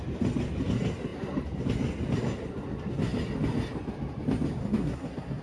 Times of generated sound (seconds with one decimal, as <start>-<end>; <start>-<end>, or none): 4.6-5.4